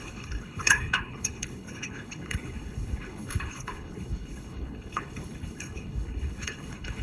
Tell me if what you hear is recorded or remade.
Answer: remade